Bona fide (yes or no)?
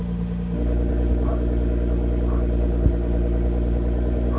yes